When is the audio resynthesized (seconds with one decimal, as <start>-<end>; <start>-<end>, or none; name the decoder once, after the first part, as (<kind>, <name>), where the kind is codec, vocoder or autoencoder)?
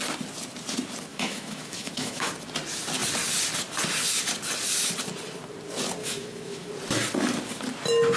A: 1.1-2.3 (autoencoder, DAC-VAE); 6.0-6.7